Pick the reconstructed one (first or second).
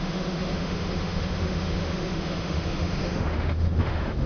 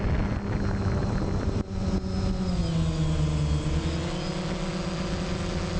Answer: first